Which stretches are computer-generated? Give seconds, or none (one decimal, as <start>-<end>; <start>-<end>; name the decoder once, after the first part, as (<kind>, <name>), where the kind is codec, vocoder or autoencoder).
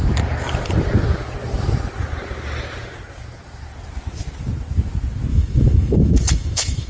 5.3-6.9 (autoencoder, DAC-VAE)